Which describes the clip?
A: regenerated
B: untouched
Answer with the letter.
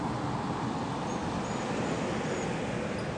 B